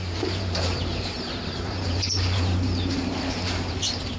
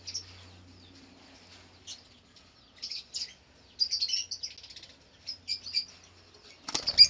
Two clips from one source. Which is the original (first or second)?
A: second